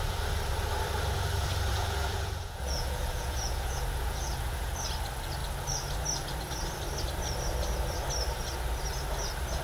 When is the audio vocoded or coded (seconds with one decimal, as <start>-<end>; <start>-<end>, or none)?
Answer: 1.7-4.7